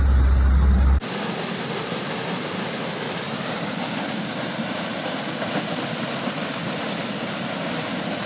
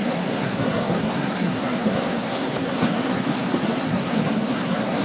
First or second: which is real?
first